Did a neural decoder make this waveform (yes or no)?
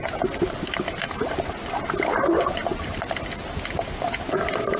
no